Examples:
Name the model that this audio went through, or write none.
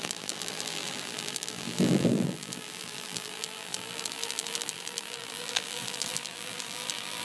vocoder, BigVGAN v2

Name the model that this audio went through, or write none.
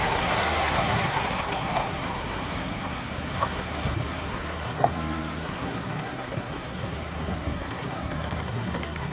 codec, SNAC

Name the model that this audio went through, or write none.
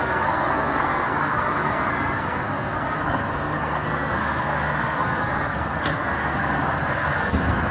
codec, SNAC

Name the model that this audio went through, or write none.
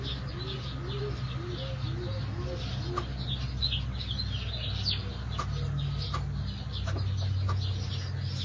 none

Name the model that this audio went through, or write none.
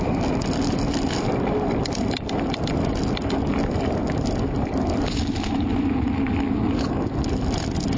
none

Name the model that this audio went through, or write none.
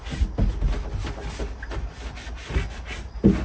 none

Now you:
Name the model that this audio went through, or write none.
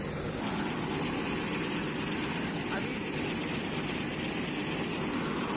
none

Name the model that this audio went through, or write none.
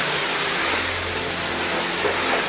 none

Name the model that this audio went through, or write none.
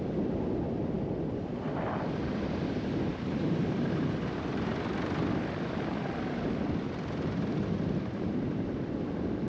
vocoder, BigVGAN v2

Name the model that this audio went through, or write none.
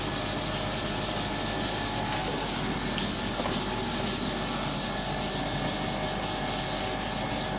none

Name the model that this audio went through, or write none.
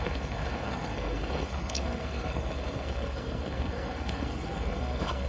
codec, SNAC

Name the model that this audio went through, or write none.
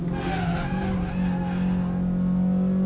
none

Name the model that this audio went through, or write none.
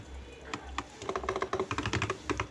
none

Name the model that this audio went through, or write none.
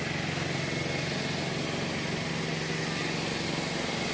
none